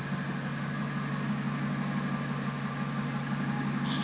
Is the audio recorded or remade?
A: recorded